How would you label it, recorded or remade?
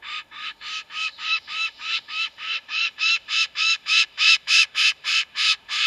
remade